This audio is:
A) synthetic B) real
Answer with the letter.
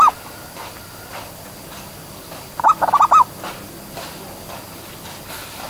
B